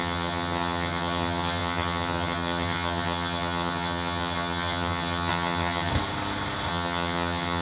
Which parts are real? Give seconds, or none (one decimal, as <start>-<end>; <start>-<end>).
5.9-6.7